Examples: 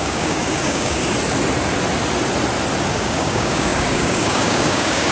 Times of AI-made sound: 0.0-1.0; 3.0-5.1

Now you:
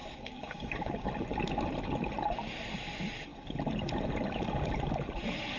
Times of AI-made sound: 0.0-1.1

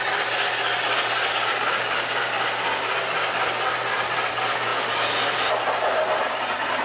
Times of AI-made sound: 1.4-2.3

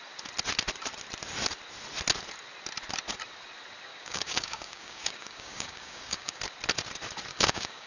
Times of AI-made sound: 3.9-6.4; 7.3-7.9

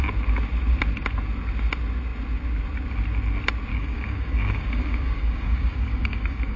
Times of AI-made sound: 3.7-6.6

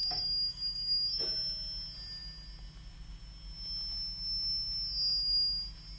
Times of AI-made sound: 0.0-1.2

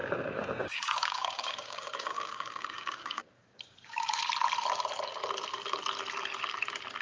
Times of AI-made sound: 0.0-4.2

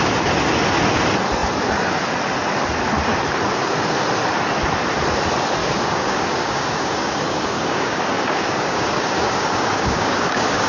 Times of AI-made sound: 5.6-10.7